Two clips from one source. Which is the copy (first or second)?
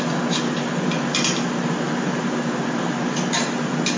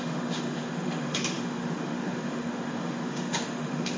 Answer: second